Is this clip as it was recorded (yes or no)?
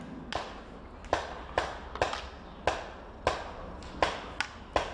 yes